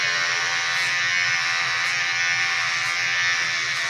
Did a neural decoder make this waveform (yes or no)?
no